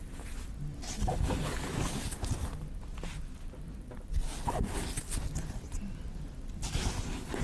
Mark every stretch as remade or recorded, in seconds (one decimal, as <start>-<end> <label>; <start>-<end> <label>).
0.0-7.4 recorded